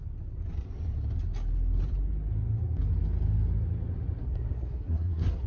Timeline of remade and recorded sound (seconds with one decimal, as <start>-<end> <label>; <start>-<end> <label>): 0.0-4.2 recorded; 4.2-5.5 remade